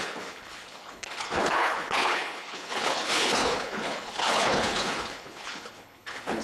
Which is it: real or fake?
fake